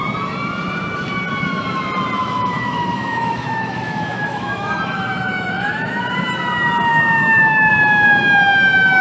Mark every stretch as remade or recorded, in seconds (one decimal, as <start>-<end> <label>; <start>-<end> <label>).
0.0-2.2 recorded; 2.2-6.0 remade; 6.0-6.9 recorded; 6.9-7.7 remade; 7.7-9.0 recorded

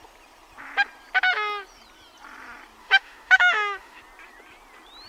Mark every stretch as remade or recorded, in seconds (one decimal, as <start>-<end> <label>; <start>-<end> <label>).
0.0-2.8 recorded; 2.8-4.0 remade; 4.0-5.1 recorded